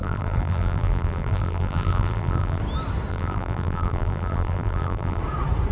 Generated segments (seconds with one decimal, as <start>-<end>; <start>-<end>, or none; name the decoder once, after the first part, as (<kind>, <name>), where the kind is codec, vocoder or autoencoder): 0.0-2.6 (vocoder, BigVGAN v2); 3.1-5.2